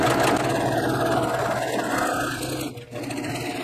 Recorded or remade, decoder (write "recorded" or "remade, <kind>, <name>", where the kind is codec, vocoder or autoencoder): recorded